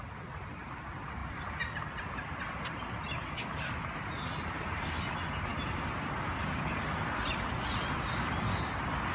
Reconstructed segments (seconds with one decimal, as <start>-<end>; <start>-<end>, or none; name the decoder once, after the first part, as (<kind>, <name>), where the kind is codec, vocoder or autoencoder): 1.2-2.1 (vocoder, BigVGAN v2); 3.0-3.8; 5.5-6.6